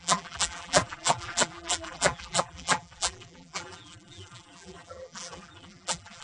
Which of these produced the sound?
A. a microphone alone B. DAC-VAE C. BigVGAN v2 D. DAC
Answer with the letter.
C